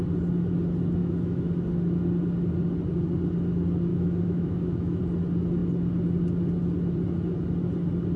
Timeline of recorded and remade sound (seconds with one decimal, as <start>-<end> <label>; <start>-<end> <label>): 0.0-1.0 recorded; 1.0-1.5 remade; 1.5-3.9 recorded; 3.9-5.0 remade; 5.0-8.2 recorded